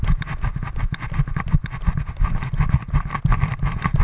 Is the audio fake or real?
real